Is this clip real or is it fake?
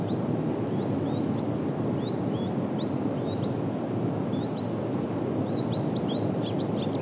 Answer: real